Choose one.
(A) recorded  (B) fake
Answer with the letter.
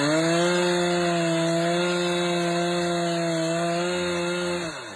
A